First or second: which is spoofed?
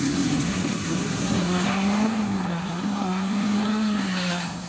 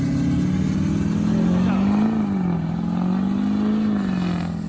first